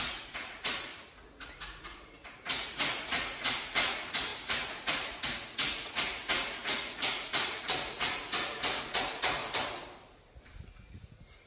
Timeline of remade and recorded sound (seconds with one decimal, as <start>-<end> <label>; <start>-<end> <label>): 0.0-9.4 remade; 9.4-10.8 recorded; 10.8-11.5 remade